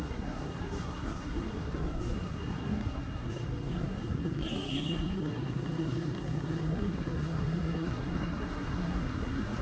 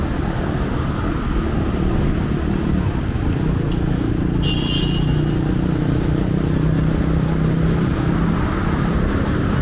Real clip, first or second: second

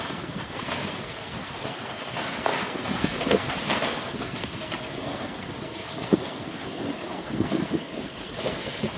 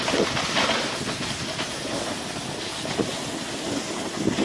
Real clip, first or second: second